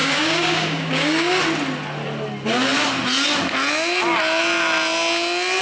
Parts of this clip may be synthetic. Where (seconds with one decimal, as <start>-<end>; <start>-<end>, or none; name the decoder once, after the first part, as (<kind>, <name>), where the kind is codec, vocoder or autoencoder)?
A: 0.0-1.4 (codec, DAC)